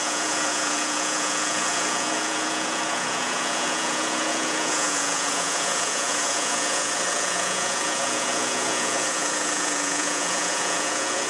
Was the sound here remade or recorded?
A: remade